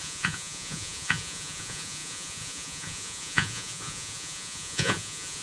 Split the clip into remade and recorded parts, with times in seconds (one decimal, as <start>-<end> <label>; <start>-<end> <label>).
0.0-5.4 remade